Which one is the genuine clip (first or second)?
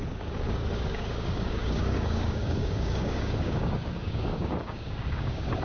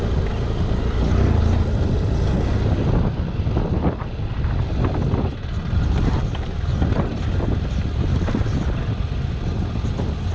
second